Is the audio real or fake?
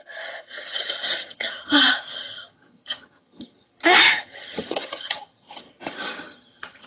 fake